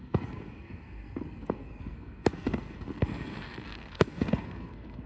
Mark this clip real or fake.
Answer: fake